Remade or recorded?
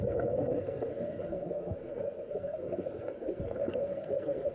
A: remade